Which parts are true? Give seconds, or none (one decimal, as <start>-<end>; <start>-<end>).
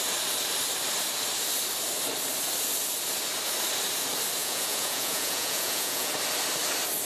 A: 0.0-4.4; 6.1-7.0